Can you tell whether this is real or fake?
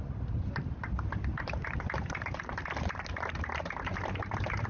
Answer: real